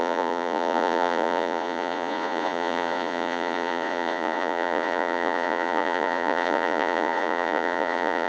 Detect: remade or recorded remade